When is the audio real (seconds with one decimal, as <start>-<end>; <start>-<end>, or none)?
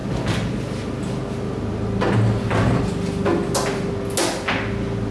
0.0-5.1